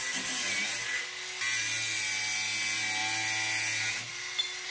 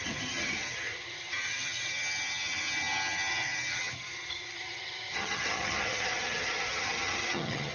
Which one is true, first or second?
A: first